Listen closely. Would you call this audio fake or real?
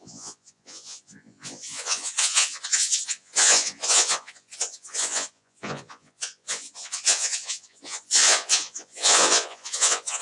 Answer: fake